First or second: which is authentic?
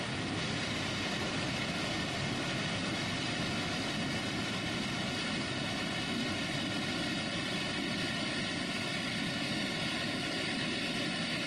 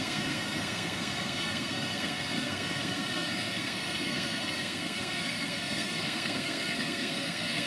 first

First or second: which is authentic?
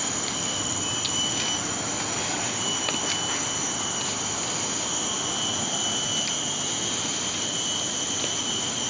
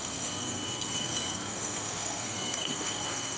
first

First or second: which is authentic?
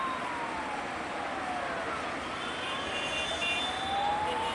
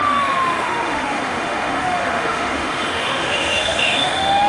first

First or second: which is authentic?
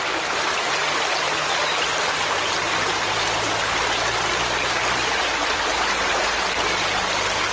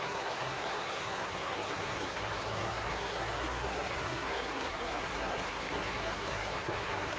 first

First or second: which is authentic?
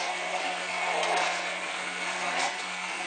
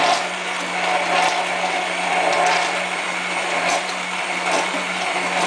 second